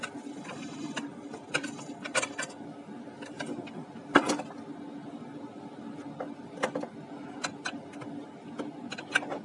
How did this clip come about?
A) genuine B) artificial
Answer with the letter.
A